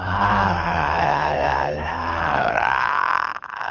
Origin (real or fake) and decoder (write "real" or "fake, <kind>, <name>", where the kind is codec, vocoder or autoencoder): fake, autoencoder, DAC-VAE